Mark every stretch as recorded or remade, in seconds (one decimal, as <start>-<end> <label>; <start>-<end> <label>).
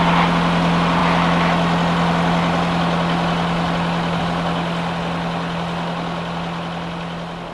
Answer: 0.0-7.5 recorded